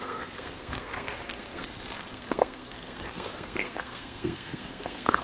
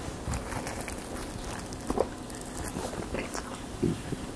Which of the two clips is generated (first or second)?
first